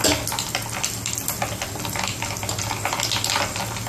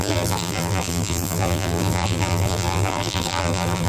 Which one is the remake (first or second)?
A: second